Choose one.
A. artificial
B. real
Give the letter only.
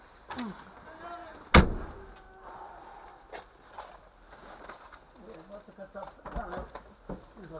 B